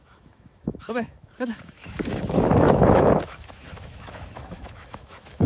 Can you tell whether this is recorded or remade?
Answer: remade